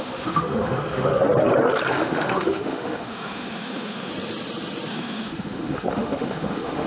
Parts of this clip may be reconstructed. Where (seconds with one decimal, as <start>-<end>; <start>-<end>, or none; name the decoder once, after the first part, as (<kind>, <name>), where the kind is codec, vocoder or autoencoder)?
0.0-1.1 (autoencoder, DAC-VAE); 1.9-4.1; 4.9-6.9